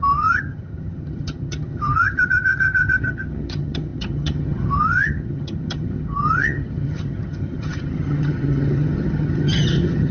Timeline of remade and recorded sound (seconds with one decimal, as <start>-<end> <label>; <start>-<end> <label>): 0.0-10.1 remade